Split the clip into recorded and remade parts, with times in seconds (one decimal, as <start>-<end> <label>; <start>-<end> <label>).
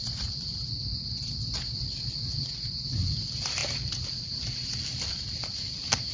0.0-2.9 recorded; 2.9-6.1 remade